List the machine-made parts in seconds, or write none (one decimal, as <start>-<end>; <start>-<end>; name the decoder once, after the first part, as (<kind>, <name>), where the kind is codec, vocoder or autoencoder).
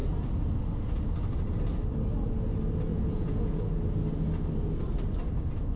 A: 2.9-3.7 (vocoder, Vocos)